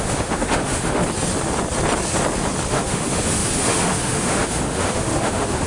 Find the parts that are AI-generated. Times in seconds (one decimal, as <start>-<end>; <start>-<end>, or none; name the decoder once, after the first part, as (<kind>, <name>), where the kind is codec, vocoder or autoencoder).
0.0-1.0 (autoencoder, DAC-VAE); 2.7-5.7